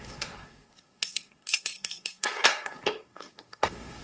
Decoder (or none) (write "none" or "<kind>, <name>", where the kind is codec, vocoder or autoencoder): codec, SNAC